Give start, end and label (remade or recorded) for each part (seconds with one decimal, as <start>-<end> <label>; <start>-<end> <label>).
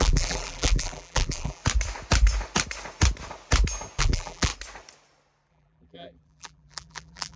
0.0-1.6 remade; 1.6-4.0 recorded; 4.0-4.5 remade; 4.5-5.5 recorded; 5.5-7.4 remade